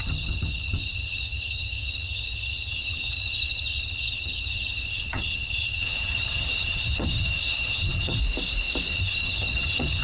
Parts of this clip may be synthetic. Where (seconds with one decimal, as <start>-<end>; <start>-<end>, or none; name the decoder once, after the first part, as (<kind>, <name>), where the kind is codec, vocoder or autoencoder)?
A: 0.0-8.2 (vocoder, HiFi-GAN); 8.9-10.0